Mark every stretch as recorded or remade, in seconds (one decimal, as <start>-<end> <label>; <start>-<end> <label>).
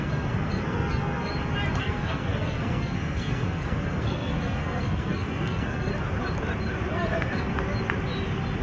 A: 0.0-1.3 remade; 1.3-1.8 recorded; 1.8-5.9 remade; 5.9-6.9 recorded; 6.9-7.5 remade; 7.5-8.6 recorded